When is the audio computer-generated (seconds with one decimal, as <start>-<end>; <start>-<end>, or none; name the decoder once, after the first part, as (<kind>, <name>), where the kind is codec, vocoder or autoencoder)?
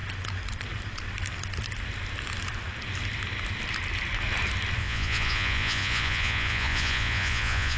4.8-7.8 (vocoder, Vocos)